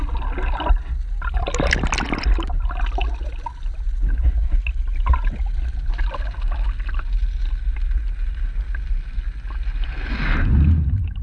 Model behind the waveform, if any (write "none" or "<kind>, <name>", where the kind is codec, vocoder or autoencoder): none